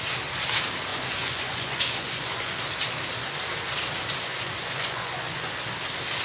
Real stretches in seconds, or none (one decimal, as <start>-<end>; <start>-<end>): 0.0-0.9; 2.6-4.3; 5.5-6.2